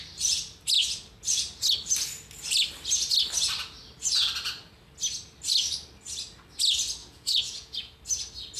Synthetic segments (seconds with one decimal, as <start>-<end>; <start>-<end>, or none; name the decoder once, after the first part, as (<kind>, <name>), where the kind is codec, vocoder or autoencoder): 7.0-8.0 (vocoder, Vocos)